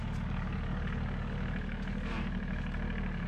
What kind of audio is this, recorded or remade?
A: remade